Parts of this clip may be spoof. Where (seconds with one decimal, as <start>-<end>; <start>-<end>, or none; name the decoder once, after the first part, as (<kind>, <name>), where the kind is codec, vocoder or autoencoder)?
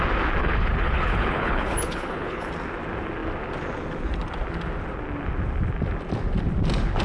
0.4-2.5 (codec, HILCodec)